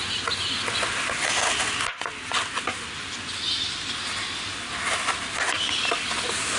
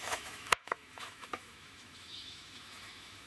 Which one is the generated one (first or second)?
second